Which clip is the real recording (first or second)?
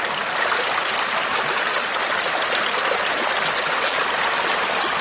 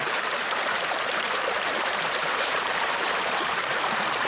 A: first